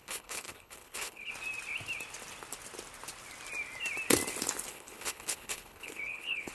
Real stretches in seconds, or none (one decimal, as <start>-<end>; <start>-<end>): 1.3-4.7

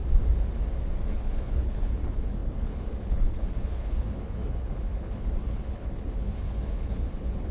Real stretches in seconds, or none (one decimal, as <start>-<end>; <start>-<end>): 0.0-1.1

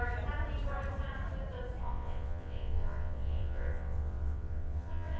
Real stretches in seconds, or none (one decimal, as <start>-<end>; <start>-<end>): 0.0-1.8

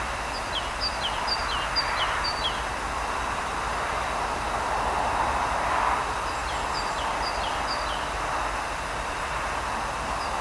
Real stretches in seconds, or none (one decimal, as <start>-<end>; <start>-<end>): 0.0-10.4

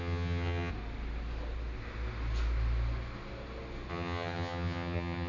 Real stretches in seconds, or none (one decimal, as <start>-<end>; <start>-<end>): 0.7-3.9

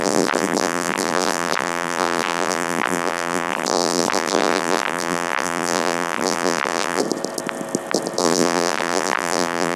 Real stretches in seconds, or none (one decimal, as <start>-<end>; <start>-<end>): 7.0-8.2

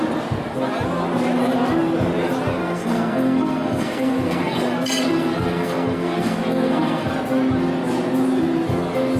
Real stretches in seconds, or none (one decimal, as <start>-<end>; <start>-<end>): 0.0-2.6; 7.1-9.2

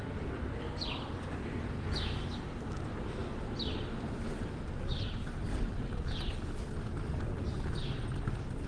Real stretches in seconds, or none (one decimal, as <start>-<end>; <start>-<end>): 0.0-5.5; 6.0-8.7